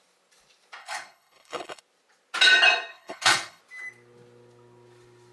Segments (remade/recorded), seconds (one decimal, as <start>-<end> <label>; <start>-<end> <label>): 0.0-0.8 recorded; 0.8-1.8 remade; 1.8-2.9 recorded; 2.9-3.6 remade; 3.6-5.3 recorded